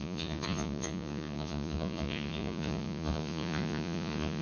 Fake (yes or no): yes